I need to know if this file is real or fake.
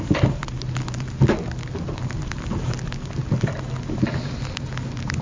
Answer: real